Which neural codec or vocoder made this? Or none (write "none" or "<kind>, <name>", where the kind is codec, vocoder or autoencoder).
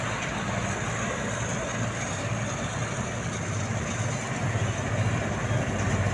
none